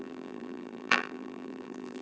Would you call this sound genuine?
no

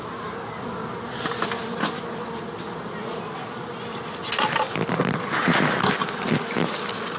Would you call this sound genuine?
yes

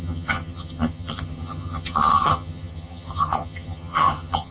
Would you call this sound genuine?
no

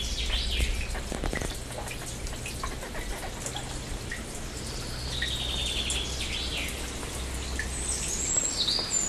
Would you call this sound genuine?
yes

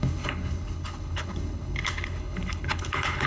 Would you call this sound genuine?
no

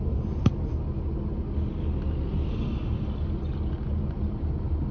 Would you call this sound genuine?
yes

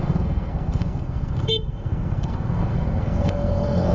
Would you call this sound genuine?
no